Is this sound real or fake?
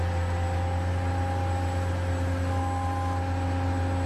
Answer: real